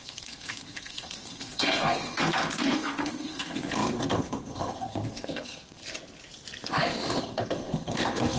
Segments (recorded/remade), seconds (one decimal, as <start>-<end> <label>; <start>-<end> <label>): 0.0-5.8 remade; 5.8-7.2 recorded; 7.2-8.4 remade